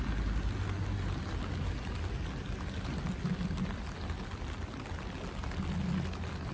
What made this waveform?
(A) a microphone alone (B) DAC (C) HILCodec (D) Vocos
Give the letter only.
A